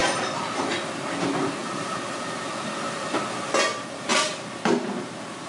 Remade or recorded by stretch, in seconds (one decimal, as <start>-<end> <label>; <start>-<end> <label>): 0.0-0.5 remade; 0.5-1.6 recorded; 1.6-3.1 remade; 3.1-4.1 recorded; 4.1-4.9 remade; 4.9-5.5 recorded